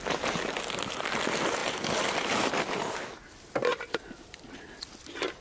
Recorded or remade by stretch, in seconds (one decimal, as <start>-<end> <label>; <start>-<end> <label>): 0.0-5.4 recorded